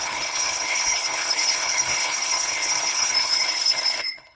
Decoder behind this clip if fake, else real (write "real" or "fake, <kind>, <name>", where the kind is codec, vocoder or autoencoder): fake, codec, HILCodec